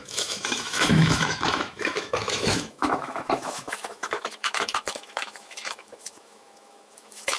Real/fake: fake